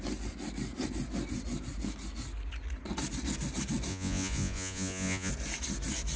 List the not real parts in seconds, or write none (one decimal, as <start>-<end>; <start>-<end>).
3.9-5.3